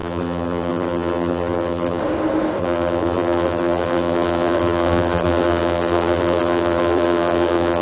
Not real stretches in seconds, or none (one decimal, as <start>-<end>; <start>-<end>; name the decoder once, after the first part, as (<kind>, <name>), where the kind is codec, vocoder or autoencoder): 0.0-2.0 (vocoder, BigVGAN v2); 2.6-7.8